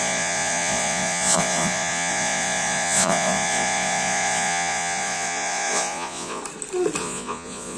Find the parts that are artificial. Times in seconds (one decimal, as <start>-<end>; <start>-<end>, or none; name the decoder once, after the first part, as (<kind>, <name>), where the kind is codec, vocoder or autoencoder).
0.0-6.4 (vocoder, Vocos); 7.0-7.8